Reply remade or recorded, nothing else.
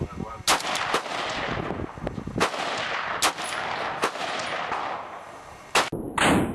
recorded